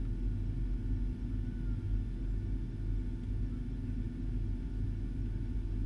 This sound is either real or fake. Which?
real